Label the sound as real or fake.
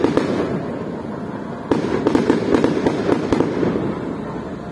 real